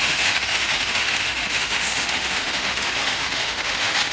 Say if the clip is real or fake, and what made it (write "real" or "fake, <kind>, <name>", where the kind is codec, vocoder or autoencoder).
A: fake, autoencoder, DAC-VAE